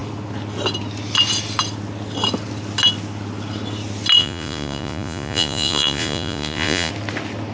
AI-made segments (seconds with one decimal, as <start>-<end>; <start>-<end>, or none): 4.2-6.9